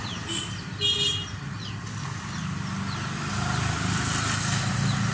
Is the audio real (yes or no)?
yes